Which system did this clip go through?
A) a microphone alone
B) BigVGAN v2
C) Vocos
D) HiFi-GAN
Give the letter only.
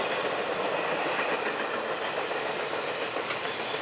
B